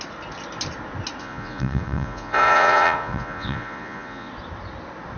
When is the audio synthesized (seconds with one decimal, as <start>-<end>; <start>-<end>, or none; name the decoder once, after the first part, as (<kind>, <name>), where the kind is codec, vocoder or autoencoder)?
1.2-4.3 (vocoder, Vocos)